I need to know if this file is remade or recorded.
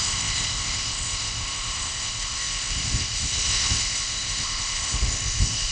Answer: remade